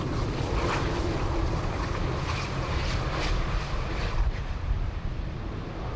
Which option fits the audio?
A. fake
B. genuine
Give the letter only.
B